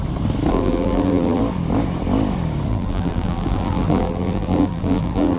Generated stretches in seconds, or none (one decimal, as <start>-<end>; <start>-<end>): 0.5-1.4; 2.7-5.4